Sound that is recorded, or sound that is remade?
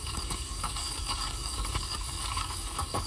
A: remade